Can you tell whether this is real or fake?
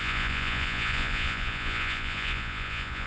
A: fake